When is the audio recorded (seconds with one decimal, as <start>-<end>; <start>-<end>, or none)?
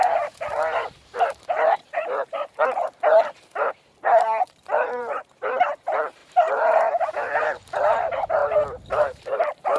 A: 8.4-8.9